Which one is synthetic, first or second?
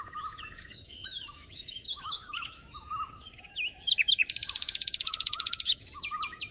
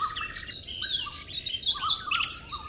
first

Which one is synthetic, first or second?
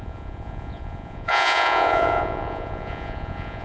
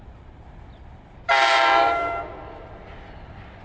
first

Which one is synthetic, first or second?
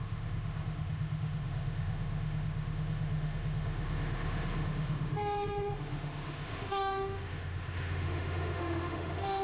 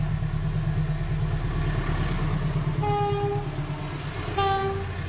first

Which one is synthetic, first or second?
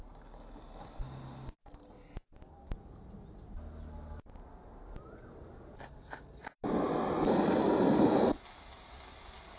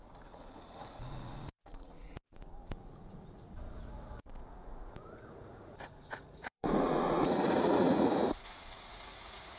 second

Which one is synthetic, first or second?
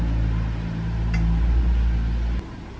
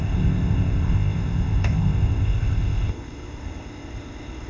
second